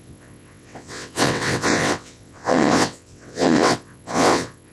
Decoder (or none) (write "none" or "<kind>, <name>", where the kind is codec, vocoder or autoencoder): vocoder, WaveNeXt